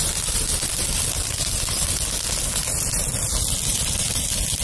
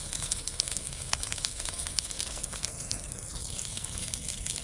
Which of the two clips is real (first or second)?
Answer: first